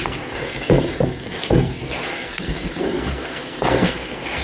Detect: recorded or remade remade